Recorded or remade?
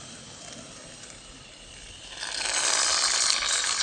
remade